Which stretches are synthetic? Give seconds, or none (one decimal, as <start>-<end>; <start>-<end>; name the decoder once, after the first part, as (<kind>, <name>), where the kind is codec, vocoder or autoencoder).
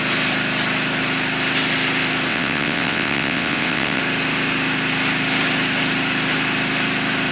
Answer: 2.3-4.0 (vocoder, WaveNeXt)